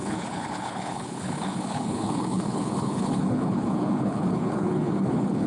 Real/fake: fake